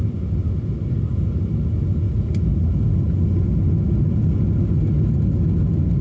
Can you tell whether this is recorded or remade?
recorded